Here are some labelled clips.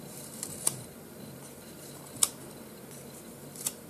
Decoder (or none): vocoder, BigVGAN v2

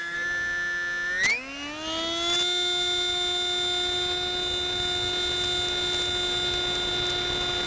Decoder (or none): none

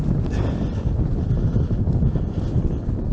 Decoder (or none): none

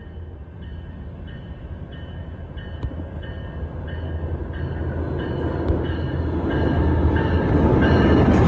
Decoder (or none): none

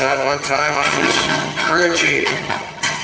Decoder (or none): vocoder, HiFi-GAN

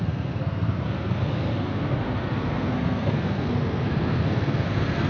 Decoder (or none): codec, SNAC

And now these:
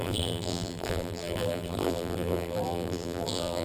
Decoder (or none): vocoder, BigVGAN v2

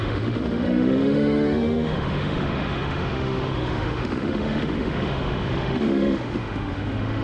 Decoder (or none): autoencoder, DAC-VAE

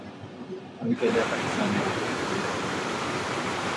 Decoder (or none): vocoder, BigVGAN v2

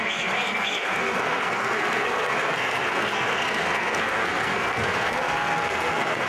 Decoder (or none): codec, SNAC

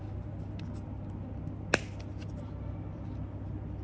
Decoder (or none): none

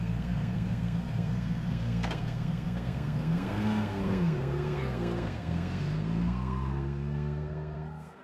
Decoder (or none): codec, SNAC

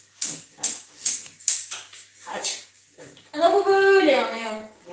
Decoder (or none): codec, DAC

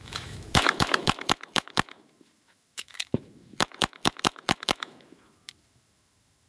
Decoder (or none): autoencoder, DAC-VAE